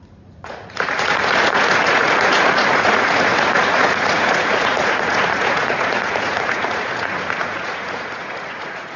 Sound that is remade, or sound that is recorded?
remade